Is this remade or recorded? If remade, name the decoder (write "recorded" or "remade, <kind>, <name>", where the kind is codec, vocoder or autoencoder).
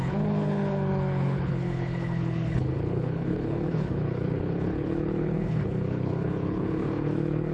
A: remade, codec, HILCodec